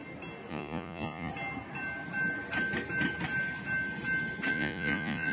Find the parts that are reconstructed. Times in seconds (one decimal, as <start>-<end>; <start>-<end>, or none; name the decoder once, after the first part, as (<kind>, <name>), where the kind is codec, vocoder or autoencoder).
0.5-1.3 (vocoder, Vocos); 4.5-5.3